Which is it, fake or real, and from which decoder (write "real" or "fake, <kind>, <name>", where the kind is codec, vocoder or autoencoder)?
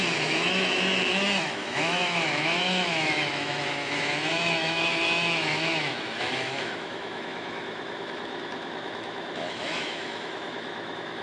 fake, autoencoder, DAC-VAE